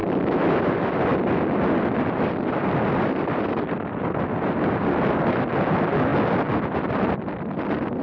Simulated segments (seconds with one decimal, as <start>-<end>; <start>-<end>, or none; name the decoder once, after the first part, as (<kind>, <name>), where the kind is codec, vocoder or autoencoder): none